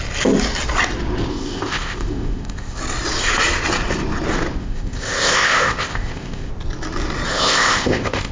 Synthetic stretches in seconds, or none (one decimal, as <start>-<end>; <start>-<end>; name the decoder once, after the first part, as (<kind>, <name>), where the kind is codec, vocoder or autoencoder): 1.3-2.8 (codec, ZipCodec); 4.6-6.5; 7.3-8.3